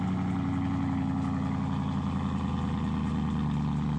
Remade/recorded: recorded